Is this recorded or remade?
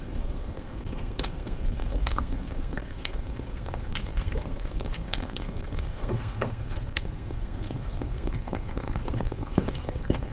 remade